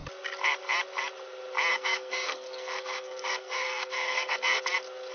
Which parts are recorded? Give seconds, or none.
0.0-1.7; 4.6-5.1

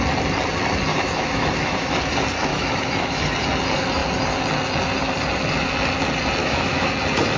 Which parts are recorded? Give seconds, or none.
0.0-0.9; 2.0-2.5; 3.2-6.4; 6.9-7.4

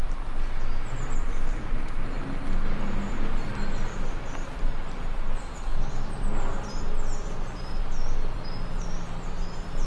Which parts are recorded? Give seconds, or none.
0.0-9.9

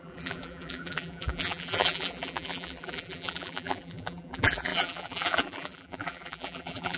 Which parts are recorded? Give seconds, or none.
none

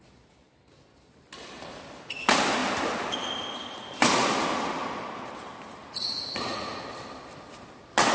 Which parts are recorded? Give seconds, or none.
0.0-5.8; 6.9-8.1

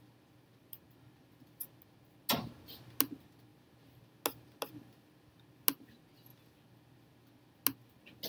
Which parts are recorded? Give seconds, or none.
0.0-8.3

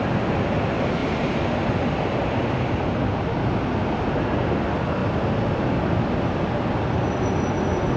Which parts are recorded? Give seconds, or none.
0.0-8.0